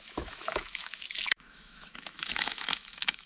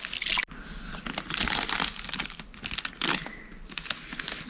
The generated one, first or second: first